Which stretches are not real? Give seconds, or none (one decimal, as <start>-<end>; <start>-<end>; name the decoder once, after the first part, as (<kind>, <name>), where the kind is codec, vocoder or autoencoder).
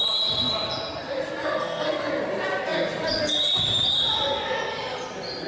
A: 1.4-2.1 (codec, SNAC)